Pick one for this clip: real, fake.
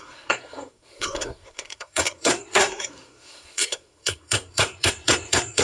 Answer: fake